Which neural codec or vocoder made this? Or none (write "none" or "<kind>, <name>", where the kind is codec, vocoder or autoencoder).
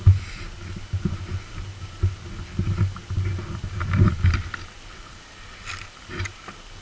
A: none